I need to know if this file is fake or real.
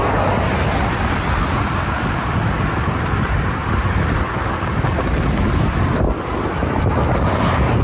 real